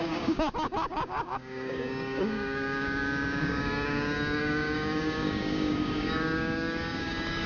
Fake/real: fake